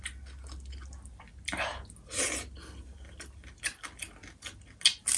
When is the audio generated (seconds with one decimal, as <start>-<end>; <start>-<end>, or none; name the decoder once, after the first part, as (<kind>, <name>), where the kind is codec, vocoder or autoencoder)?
none